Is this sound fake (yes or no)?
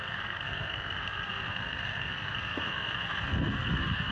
yes